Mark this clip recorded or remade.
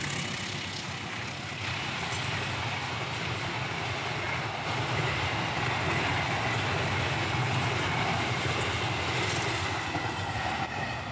recorded